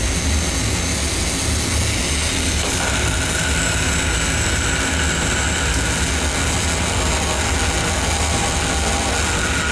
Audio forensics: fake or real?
real